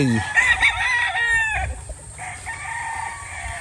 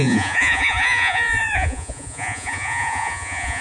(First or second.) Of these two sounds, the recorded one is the first